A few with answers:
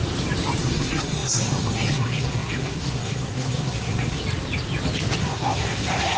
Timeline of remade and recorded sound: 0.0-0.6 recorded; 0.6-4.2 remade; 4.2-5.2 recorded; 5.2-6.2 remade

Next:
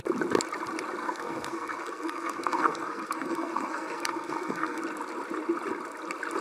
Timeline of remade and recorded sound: 0.0-1.0 recorded; 1.0-4.8 remade; 4.8-6.4 recorded